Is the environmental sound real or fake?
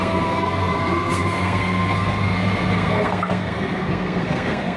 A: fake